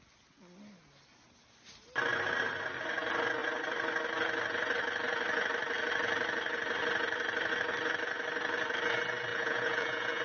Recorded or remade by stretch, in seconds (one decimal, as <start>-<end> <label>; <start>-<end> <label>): 0.0-9.3 recorded; 9.3-10.2 remade